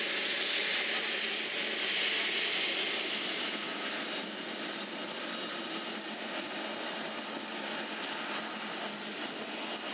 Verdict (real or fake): real